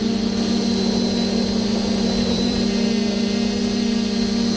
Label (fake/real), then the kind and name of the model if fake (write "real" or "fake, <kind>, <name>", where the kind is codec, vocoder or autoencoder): fake, vocoder, BigVGAN v2